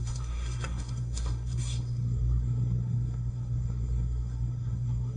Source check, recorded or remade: remade